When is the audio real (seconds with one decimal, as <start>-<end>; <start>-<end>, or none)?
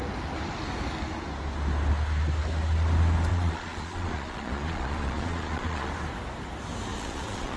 0.0-3.3; 5.9-6.9